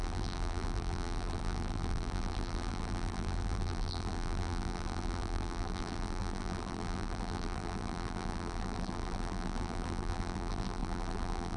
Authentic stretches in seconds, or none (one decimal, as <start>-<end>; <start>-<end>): none